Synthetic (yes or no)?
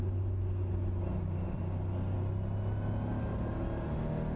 no